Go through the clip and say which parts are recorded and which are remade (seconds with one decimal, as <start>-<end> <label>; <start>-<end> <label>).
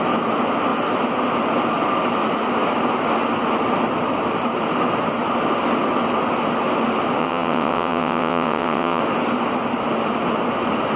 0.0-7.2 recorded; 7.2-9.0 remade; 9.0-11.0 recorded